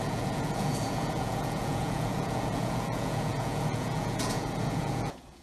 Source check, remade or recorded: remade